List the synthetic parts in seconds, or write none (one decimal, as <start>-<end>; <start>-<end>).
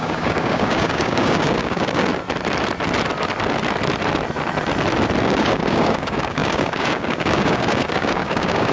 0.0-2.1; 5.2-8.7